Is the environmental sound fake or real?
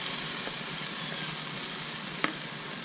real